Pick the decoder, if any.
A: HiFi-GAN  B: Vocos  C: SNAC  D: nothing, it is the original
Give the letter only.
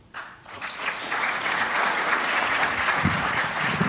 B